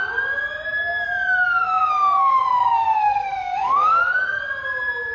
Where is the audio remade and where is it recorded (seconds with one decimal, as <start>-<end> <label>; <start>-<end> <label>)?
0.0-1.6 recorded; 1.6-4.4 remade; 4.4-5.1 recorded